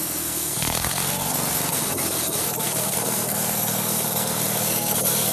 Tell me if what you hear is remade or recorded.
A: remade